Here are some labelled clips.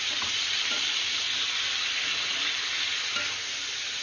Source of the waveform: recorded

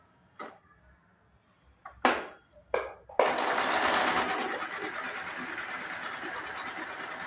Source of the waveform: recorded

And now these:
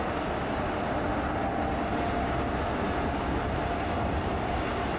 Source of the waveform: recorded